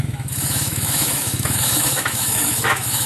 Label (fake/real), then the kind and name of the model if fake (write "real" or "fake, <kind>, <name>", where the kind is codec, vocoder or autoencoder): fake, autoencoder, DAC-VAE